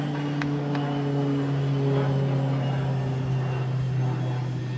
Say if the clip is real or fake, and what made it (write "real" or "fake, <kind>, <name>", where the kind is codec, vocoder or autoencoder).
real